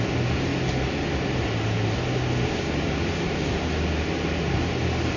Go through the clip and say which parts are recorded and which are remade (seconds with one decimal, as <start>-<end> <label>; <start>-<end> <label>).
0.0-5.2 recorded